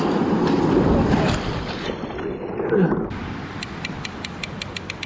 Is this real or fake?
real